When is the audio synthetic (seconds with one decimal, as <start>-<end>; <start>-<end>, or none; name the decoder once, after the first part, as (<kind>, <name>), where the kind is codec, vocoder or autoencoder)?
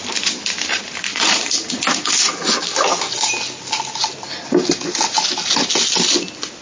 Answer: 1.1-2.5 (vocoder, Vocos)